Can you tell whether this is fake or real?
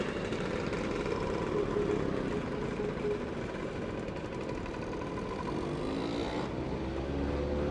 real